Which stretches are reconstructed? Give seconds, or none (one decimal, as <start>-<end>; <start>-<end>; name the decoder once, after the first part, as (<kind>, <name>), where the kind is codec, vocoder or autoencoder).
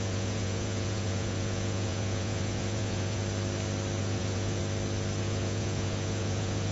0.0-3.2 (vocoder, Vocos); 4.0-4.6; 5.2-6.7